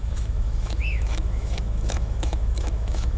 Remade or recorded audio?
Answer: remade